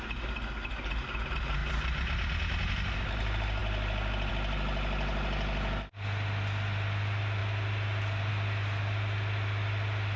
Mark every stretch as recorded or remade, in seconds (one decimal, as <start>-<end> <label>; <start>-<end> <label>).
0.0-10.2 recorded

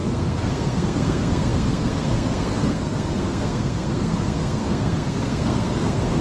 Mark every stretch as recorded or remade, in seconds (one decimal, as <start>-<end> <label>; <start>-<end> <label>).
0.0-6.2 remade

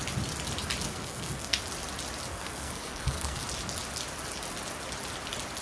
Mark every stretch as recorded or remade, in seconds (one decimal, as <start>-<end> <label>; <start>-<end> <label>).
0.0-0.9 recorded; 0.9-1.6 remade; 1.6-2.3 recorded; 2.3-3.4 remade; 3.4-5.6 recorded

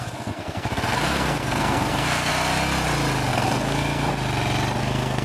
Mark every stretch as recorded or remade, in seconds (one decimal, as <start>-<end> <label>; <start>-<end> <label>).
0.0-2.3 remade; 2.3-3.3 recorded; 3.3-4.1 remade; 4.1-4.8 recorded; 4.8-5.2 remade

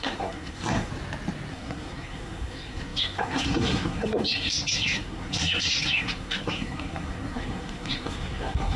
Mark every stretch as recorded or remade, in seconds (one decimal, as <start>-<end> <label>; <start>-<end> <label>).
0.0-0.9 remade; 0.9-1.5 recorded; 1.5-8.8 remade

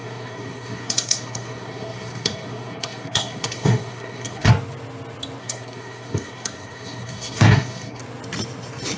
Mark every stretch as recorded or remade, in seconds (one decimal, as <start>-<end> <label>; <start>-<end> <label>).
0.0-4.5 remade; 4.5-5.4 recorded; 5.4-8.0 remade; 8.0-9.0 recorded